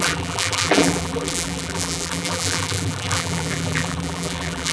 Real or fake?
fake